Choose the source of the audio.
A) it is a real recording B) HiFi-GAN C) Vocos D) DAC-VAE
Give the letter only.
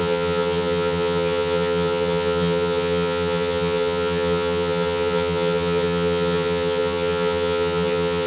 B